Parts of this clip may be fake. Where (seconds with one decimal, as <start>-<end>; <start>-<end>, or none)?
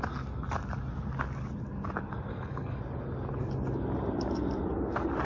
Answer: 2.3-2.8